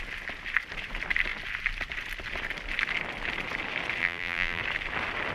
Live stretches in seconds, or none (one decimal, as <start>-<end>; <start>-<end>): 0.0-4.0; 4.6-5.3